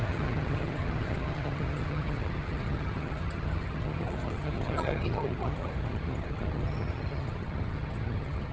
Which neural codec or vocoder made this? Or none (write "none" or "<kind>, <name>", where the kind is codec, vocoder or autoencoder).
vocoder, HiFi-GAN